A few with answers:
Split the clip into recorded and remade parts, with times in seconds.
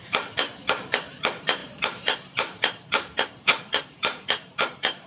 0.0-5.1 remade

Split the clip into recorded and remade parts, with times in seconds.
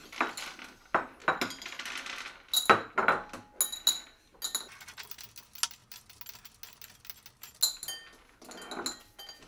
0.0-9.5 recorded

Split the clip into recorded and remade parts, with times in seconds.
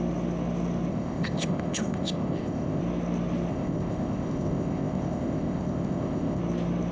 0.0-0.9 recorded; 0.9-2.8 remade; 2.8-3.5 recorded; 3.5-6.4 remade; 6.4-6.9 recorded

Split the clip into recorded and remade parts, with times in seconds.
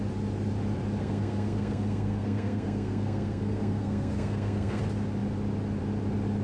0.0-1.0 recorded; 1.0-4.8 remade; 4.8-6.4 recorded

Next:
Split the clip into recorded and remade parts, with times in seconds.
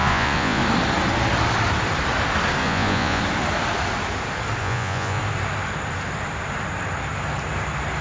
0.0-0.6 remade; 0.6-2.6 recorded; 2.6-3.2 remade; 3.2-4.6 recorded; 4.6-5.2 remade; 5.2-8.0 recorded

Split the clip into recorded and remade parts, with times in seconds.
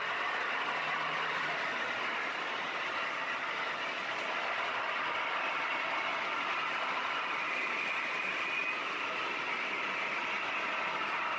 0.0-6.1 recorded; 6.1-7.5 remade; 7.5-8.6 recorded; 8.6-9.2 remade; 9.2-11.4 recorded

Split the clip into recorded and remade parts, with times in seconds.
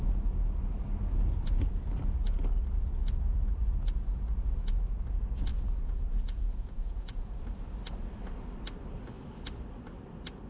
0.0-5.5 recorded; 5.5-7.4 remade; 7.4-10.5 recorded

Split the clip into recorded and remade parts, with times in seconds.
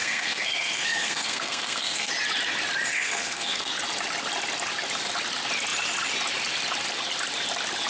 0.0-2.1 remade; 2.1-2.9 recorded; 2.9-3.7 remade; 3.7-7.9 recorded